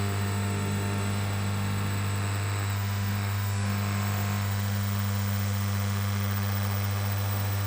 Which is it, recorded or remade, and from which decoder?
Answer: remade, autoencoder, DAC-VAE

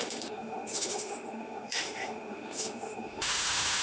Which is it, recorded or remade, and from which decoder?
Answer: remade, autoencoder, DAC-VAE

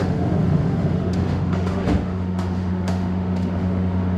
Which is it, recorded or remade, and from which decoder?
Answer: remade, autoencoder, DAC-VAE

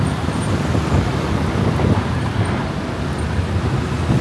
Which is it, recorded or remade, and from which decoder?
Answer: recorded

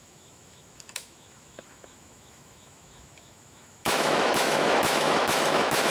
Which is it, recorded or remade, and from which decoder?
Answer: remade, autoencoder, DAC-VAE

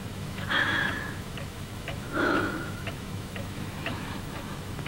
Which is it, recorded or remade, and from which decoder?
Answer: remade, autoencoder, DAC-VAE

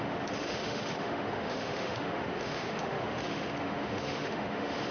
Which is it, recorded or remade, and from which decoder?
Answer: remade, autoencoder, DAC-VAE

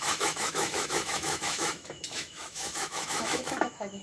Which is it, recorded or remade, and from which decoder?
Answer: remade, autoencoder, DAC-VAE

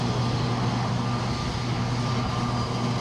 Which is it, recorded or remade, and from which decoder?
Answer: recorded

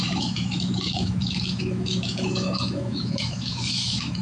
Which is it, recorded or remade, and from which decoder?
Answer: remade, autoencoder, DAC-VAE